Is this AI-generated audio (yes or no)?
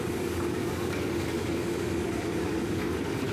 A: yes